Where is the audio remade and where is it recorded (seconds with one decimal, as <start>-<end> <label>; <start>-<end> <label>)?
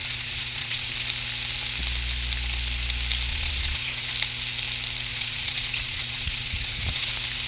0.0-0.9 remade; 0.9-3.3 recorded; 3.3-4.1 remade; 4.1-5.1 recorded; 5.1-7.1 remade; 7.1-7.5 recorded